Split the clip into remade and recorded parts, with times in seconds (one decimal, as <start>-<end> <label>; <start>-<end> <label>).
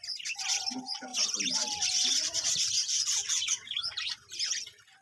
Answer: 0.0-5.0 recorded